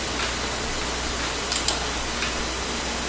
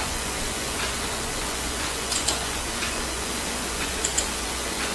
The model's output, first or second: second